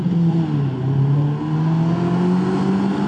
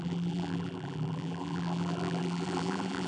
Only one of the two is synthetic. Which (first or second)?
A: second